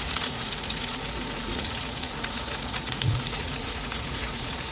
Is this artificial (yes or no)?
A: yes